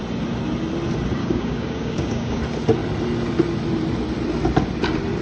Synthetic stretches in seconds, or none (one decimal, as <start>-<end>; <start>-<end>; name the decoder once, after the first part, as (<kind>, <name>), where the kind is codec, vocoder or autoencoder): 1.2-2.4 (codec, DAC)